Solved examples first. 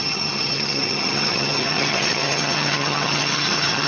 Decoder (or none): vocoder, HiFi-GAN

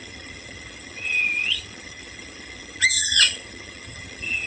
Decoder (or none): vocoder, HiFi-GAN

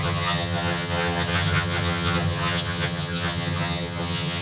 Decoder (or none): vocoder, HiFi-GAN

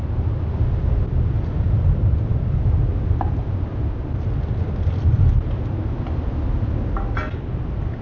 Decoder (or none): none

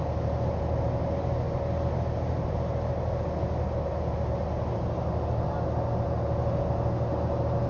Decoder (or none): none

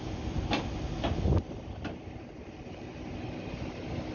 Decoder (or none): none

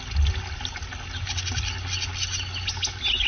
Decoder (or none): none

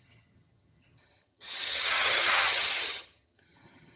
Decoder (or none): vocoder, HiFi-GAN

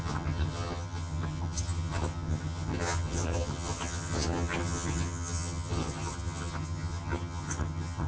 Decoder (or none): vocoder, HiFi-GAN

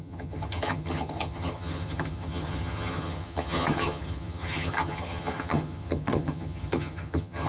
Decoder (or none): vocoder, HiFi-GAN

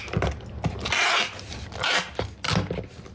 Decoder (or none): none